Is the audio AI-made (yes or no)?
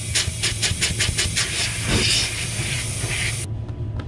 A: no